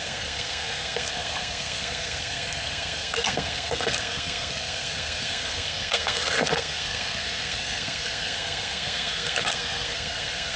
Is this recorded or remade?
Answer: remade